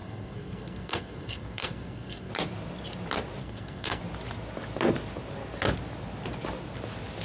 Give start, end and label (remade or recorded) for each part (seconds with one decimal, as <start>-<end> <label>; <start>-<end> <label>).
0.0-2.3 remade; 2.3-3.4 recorded; 3.4-4.0 remade; 4.0-7.2 recorded